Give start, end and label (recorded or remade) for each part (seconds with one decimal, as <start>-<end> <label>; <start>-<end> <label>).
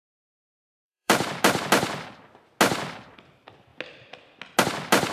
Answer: 0.0-0.6 recorded; 0.6-1.4 remade; 1.4-5.1 recorded